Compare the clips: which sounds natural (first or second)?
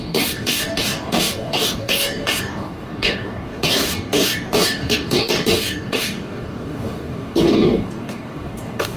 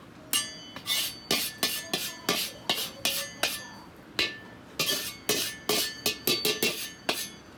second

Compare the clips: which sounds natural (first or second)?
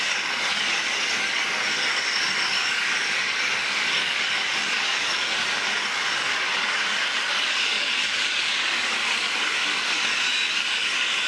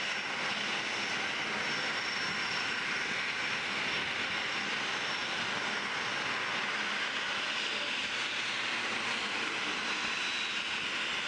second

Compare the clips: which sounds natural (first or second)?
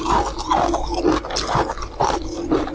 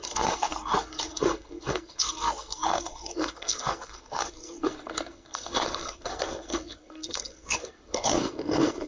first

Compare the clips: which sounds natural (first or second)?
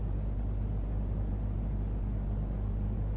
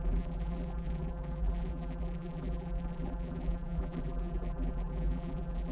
first